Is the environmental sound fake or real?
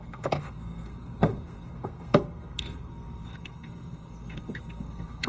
fake